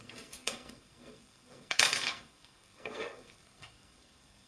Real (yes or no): no